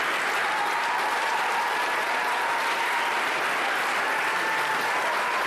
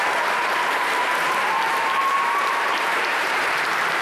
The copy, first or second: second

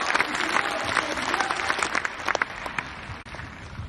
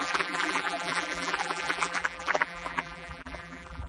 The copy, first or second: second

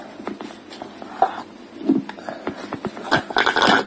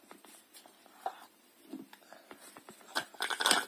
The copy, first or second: second